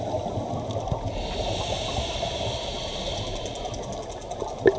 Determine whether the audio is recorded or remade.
recorded